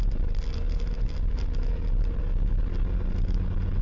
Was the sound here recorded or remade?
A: recorded